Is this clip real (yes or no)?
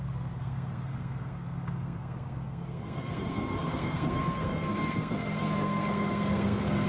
no